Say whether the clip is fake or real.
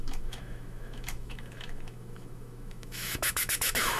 fake